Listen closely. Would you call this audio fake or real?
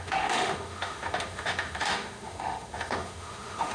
fake